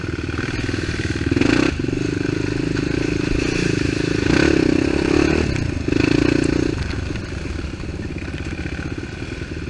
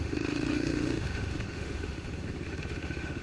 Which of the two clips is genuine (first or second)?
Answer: first